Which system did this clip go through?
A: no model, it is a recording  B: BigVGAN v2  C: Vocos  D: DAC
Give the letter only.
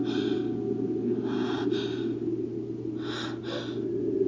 A